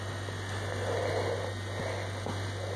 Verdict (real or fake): real